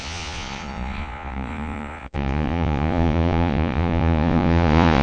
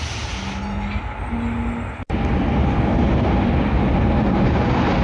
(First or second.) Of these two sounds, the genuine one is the second